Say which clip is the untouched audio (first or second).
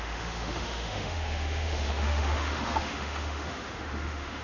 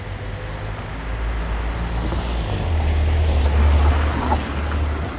second